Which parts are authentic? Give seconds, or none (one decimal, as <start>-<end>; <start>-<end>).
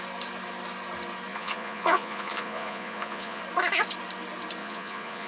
0.0-1.3; 3.4-4.6